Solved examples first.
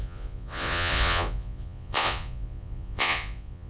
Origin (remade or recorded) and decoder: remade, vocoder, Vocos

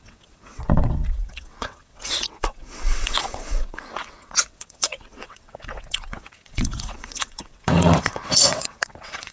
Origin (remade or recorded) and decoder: remade, vocoder, WaveNeXt